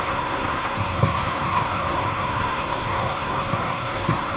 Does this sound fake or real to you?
fake